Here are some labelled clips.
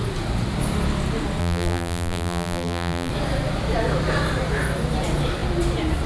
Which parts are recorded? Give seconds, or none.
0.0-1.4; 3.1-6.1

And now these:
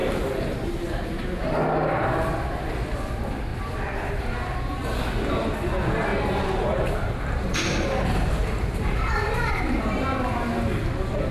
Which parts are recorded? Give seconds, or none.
0.0-6.1; 10.2-11.3

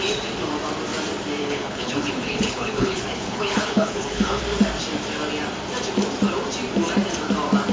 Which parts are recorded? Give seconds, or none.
0.0-1.4; 4.4-7.7

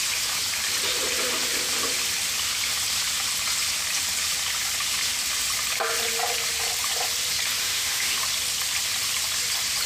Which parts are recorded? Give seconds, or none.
0.0-7.6; 8.2-9.9

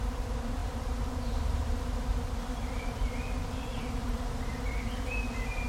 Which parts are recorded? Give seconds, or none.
none